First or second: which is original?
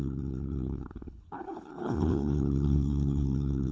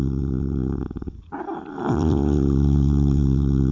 second